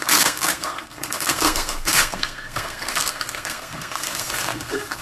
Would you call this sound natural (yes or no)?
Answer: no